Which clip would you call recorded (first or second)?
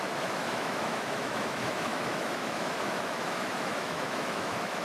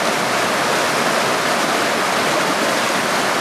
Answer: second